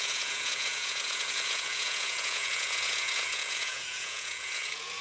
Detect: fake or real fake